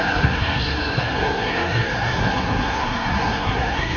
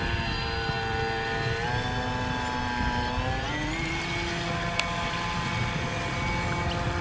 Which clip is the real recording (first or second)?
second